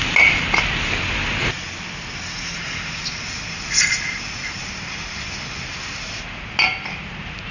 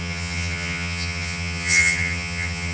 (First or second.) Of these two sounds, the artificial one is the second